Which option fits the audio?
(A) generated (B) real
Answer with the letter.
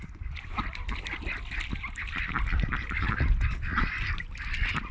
B